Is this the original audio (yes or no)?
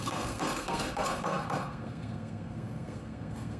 no